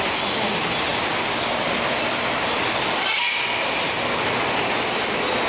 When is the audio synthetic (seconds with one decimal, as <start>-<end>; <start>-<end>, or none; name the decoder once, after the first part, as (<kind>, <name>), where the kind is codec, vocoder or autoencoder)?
none